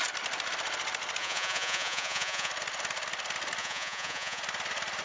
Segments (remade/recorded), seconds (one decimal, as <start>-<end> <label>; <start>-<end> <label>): 0.0-1.2 recorded; 1.2-2.5 remade; 2.5-3.6 recorded; 3.6-4.4 remade; 4.4-5.0 recorded